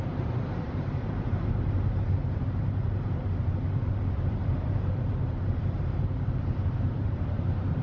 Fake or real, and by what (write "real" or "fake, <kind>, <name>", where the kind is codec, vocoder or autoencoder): fake, vocoder, BigVGAN v2